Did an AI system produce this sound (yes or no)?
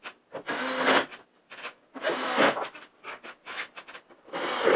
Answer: no